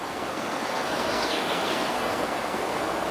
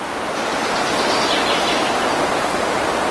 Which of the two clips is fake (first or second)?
first